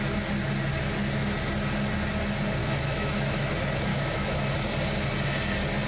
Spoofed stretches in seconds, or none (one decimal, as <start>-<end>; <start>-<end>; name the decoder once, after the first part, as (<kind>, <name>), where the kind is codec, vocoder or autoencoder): 2.6-3.5 (autoencoder, DAC-VAE); 3.9-4.4